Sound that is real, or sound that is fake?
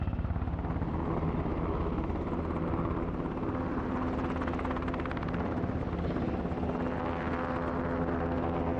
real